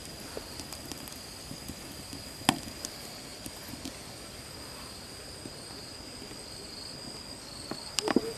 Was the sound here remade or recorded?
recorded